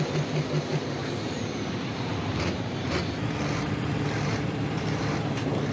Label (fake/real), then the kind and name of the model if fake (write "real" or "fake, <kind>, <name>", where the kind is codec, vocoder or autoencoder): fake, vocoder, BigVGAN v2